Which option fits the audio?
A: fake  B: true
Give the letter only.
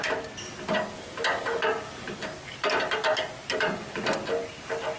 B